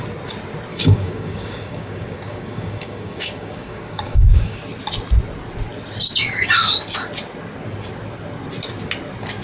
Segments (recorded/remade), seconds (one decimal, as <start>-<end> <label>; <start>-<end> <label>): 0.0-0.7 recorded; 0.7-4.6 remade; 4.6-9.4 recorded